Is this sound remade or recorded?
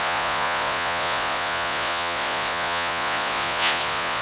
remade